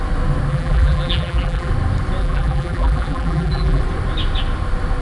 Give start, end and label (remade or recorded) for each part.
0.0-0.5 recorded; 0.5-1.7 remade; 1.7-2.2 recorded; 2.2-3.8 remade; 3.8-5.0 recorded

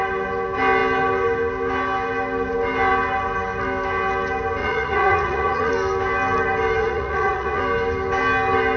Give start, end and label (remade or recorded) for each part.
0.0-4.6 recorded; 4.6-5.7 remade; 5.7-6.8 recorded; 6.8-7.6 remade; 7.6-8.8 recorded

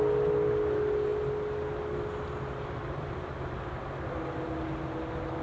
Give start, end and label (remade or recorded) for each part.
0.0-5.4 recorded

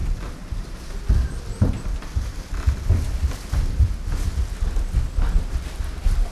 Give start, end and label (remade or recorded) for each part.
0.0-6.3 recorded